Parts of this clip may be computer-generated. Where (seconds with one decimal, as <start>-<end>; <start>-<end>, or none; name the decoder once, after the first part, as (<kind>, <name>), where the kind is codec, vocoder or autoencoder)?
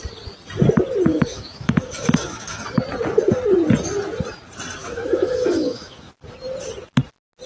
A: 1.1-2.8 (autoencoder, DAC-VAE); 4.8-6.1